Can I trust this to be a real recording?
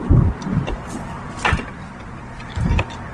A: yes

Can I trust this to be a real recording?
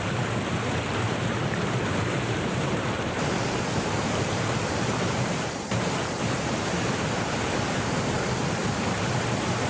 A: no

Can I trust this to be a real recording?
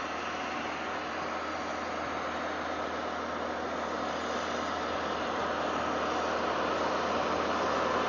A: yes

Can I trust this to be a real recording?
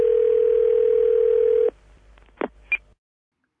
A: yes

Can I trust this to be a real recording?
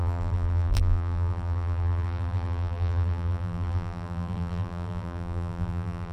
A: no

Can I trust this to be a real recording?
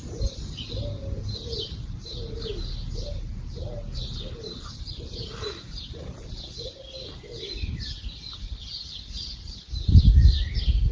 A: yes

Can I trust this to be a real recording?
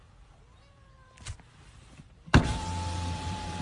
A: no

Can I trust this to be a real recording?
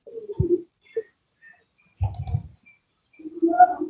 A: yes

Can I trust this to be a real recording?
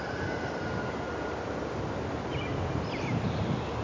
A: yes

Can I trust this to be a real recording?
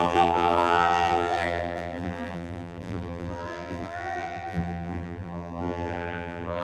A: no